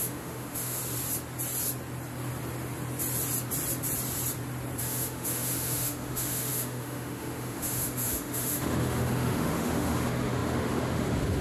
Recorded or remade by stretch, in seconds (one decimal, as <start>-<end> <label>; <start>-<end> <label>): 0.0-0.8 remade; 0.8-4.8 recorded; 4.8-11.4 remade